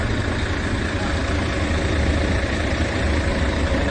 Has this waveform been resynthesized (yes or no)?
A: no